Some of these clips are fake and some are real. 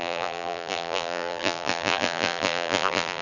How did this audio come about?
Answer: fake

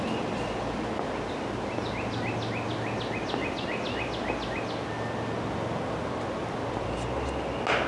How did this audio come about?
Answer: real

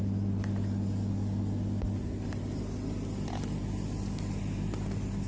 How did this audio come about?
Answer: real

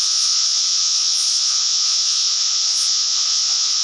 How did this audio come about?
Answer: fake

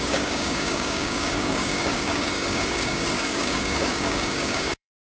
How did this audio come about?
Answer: fake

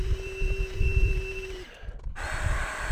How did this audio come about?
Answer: real